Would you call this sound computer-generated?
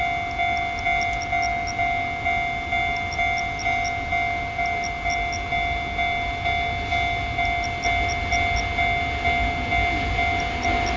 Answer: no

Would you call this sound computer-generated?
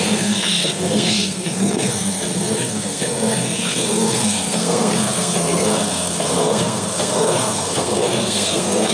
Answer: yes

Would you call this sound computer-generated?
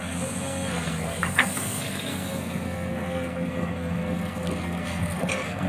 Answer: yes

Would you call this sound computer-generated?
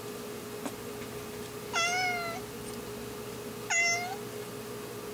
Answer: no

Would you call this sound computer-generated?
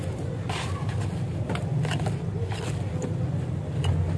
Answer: no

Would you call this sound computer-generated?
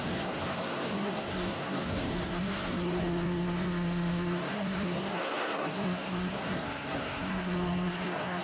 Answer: yes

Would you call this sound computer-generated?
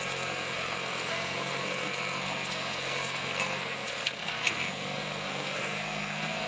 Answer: yes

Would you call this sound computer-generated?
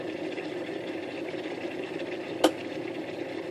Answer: no